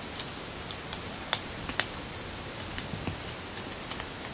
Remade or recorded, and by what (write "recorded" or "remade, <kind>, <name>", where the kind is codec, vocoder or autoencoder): recorded